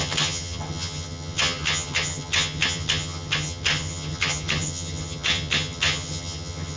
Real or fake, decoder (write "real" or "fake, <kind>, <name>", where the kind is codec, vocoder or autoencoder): fake, vocoder, HiFi-GAN